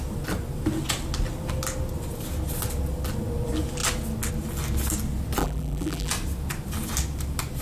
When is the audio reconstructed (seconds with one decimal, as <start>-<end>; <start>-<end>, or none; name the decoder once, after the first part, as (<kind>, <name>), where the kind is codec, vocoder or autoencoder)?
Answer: 5.4-6.1 (vocoder, BigVGAN v2)